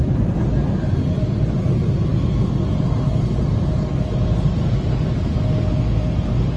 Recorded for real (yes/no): yes